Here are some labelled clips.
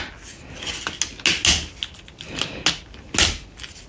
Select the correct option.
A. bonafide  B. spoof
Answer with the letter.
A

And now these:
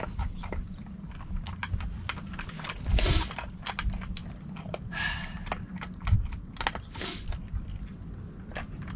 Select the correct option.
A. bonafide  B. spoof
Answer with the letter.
A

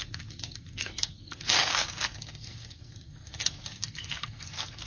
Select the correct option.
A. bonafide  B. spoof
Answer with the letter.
B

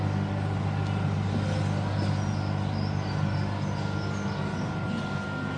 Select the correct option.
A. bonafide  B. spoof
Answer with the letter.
A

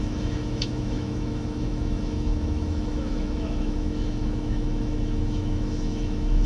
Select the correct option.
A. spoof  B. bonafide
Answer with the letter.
A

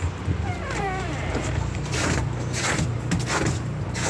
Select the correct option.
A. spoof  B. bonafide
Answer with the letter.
B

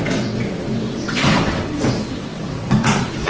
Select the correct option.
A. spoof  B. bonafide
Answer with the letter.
A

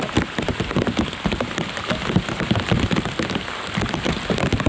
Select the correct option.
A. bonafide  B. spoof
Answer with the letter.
A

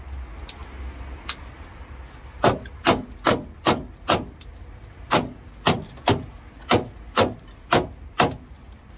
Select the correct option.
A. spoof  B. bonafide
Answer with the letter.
B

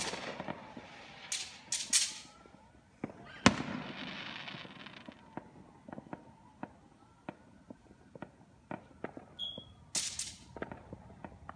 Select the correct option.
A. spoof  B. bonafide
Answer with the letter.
B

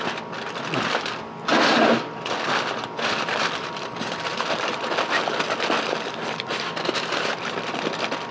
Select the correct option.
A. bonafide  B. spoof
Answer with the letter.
A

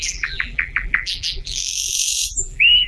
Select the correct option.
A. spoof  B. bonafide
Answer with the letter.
A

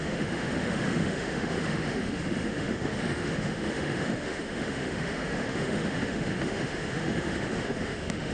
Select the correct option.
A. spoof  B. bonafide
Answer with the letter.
A